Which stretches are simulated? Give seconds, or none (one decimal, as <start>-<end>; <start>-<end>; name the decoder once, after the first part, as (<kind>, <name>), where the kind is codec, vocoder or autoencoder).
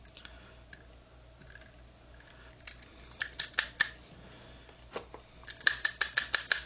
none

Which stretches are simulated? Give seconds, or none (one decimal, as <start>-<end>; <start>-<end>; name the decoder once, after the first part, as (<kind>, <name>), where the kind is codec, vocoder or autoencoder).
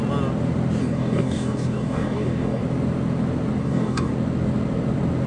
0.8-2.6 (codec, DAC); 3.6-4.1